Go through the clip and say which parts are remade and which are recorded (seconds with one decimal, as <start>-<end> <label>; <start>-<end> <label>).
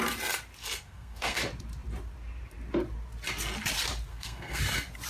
0.0-0.6 recorded; 0.6-1.4 remade; 1.4-4.1 recorded; 4.1-4.6 remade; 4.6-5.1 recorded